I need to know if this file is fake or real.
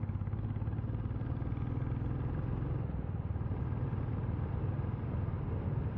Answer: real